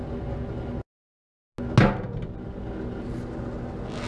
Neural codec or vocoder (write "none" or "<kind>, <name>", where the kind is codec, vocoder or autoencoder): none